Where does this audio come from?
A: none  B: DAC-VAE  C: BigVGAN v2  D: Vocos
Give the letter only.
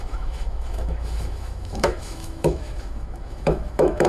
B